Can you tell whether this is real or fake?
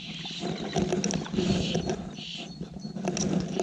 real